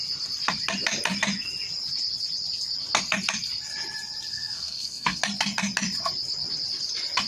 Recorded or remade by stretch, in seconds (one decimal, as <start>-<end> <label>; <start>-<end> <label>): 0.0-4.3 recorded; 4.3-5.2 remade; 5.2-7.3 recorded